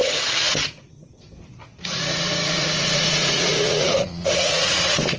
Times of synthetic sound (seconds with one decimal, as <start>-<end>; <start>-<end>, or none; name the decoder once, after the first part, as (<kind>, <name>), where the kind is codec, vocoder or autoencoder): 0.0-0.9 (vocoder, Vocos); 1.7-4.8